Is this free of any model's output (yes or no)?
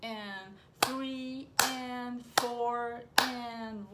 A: yes